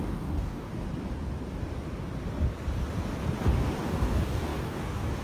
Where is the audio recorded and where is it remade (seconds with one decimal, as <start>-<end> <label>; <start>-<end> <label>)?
0.0-0.7 remade; 0.7-3.8 recorded; 3.8-5.2 remade